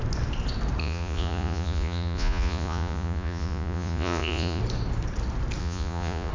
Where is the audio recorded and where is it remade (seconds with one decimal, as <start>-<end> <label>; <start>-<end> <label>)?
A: 0.0-0.8 recorded; 0.8-4.6 remade; 4.6-5.6 recorded; 5.6-6.3 remade